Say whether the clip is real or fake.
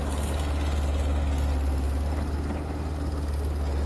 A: real